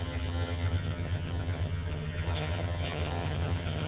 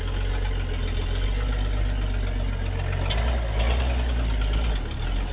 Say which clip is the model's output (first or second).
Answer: first